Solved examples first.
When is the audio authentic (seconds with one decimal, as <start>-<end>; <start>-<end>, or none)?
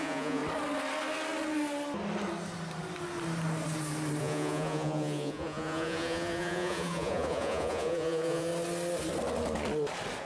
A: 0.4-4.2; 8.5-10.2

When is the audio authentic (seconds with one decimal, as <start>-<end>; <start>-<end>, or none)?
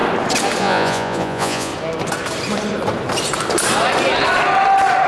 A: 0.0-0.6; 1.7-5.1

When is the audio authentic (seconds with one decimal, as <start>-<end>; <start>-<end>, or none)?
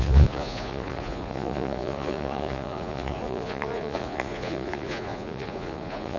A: none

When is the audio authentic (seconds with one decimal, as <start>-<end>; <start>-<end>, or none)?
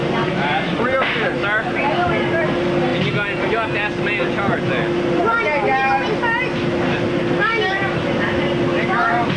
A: 0.0-9.4